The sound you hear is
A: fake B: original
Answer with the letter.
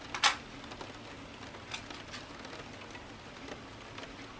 B